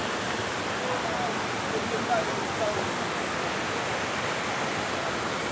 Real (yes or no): yes